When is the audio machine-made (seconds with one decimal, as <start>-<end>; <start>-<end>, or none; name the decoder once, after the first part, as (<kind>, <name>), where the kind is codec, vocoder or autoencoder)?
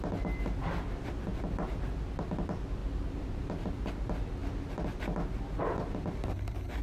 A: 2.8-3.7 (vocoder, BigVGAN v2)